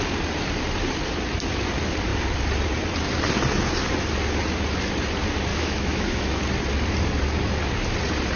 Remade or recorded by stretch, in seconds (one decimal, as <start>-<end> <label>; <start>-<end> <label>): 0.0-5.5 recorded; 5.5-6.4 remade; 6.4-8.4 recorded